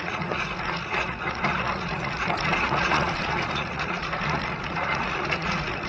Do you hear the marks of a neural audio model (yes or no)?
yes